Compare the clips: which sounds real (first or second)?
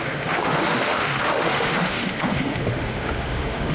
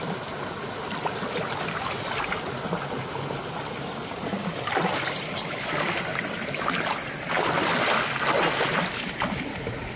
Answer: second